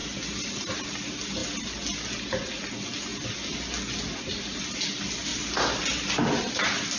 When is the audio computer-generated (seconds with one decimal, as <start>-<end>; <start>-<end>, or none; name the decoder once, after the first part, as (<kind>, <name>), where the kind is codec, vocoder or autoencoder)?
none

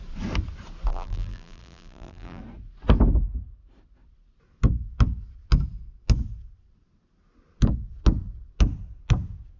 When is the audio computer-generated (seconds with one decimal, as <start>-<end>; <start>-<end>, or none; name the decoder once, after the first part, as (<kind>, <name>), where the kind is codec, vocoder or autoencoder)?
0.9-2.4 (vocoder, BigVGAN v2)